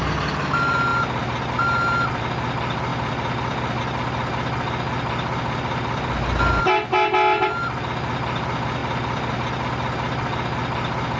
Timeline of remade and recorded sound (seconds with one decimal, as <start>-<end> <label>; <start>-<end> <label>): 0.0-11.2 recorded